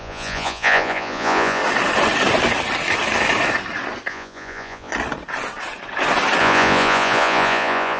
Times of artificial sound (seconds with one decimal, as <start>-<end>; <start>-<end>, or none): 0.0-1.6; 4.1-4.9; 6.4-8.0